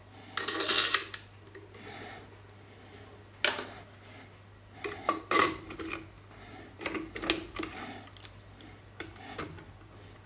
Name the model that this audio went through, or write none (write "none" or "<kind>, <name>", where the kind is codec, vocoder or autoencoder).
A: none